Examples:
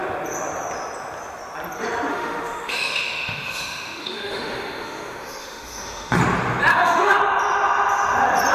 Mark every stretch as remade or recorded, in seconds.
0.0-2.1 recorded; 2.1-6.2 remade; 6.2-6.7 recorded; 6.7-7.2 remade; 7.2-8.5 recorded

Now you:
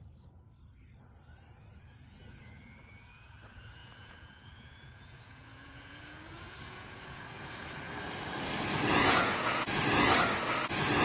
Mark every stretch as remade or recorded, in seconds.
0.0-3.8 recorded; 3.8-7.9 remade; 7.9-8.9 recorded; 8.9-9.7 remade; 9.7-11.0 recorded

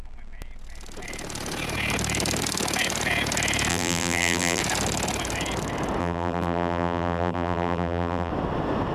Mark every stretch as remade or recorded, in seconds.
0.0-3.7 recorded; 3.7-4.6 remade; 4.6-6.0 recorded; 6.0-8.3 remade; 8.3-8.9 recorded